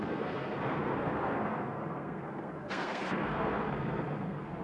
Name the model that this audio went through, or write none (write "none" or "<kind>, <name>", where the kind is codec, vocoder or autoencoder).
codec, SNAC